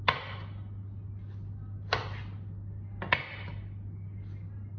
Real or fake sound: real